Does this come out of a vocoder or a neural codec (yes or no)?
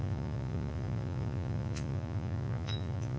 yes